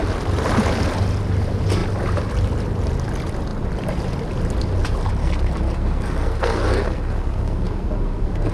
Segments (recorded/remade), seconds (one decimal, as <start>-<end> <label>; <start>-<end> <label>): 0.0-5.2 recorded; 5.2-8.5 remade